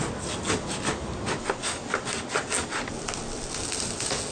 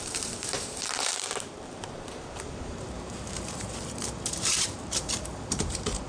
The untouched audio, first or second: first